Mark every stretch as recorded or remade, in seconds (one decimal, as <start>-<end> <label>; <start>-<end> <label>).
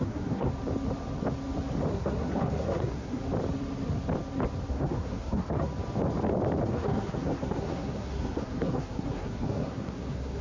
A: 0.0-0.5 remade; 0.5-1.9 recorded; 1.9-3.2 remade; 3.2-4.7 recorded; 4.7-5.7 remade; 5.7-6.6 recorded; 6.6-10.4 remade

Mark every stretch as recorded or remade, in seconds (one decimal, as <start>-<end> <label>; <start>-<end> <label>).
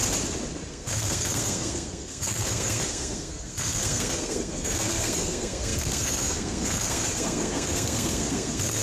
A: 0.0-0.7 recorded; 0.7-8.8 remade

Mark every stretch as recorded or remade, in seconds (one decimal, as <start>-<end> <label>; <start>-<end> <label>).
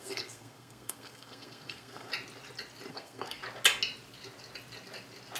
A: 0.0-2.1 remade; 2.1-2.9 recorded; 2.9-3.4 remade; 3.4-5.4 recorded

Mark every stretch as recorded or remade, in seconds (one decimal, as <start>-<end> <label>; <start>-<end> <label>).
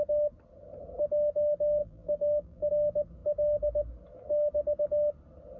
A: 0.0-1.8 recorded; 1.8-2.7 remade; 2.7-5.6 recorded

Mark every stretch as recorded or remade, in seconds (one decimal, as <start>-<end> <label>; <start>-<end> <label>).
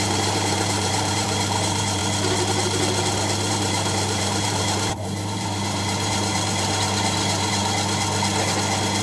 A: 0.0-2.0 remade; 2.0-3.5 recorded; 3.5-7.6 remade; 7.6-9.0 recorded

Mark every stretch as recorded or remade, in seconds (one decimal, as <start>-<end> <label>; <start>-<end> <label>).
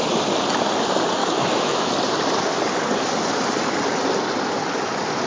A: 0.0-1.2 recorded; 1.2-1.9 remade; 1.9-5.3 recorded